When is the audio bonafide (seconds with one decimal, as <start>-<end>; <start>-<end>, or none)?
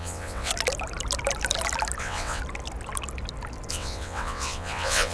0.5-2.0; 2.4-3.7